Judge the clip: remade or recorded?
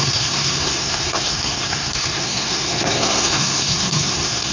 remade